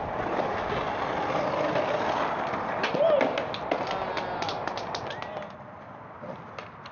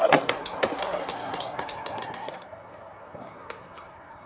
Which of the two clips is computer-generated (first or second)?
second